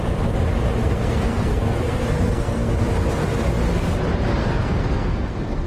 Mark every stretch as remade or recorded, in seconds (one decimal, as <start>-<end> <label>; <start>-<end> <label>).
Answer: 0.0-0.8 recorded; 0.8-2.7 remade; 2.7-4.4 recorded; 4.4-5.7 remade